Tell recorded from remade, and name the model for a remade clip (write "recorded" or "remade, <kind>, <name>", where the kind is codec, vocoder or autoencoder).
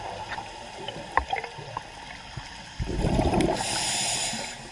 recorded